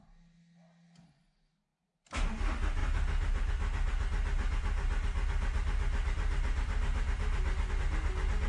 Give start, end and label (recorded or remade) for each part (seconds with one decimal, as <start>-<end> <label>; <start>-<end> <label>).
0.0-8.5 recorded